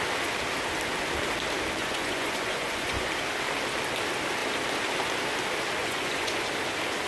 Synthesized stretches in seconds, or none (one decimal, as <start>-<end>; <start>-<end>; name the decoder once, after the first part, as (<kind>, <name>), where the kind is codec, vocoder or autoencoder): 1.8-3.1 (vocoder, Vocos); 5.8-6.5